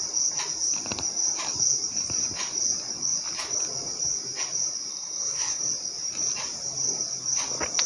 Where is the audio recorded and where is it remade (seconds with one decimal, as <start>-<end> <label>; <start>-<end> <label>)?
0.0-4.9 recorded; 4.9-5.6 remade; 5.6-7.9 recorded